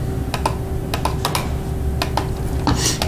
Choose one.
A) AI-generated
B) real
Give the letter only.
B